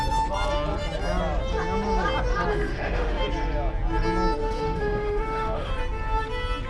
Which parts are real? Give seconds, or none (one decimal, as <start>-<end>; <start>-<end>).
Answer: 0.0-2.5; 3.2-4.4; 5.7-6.7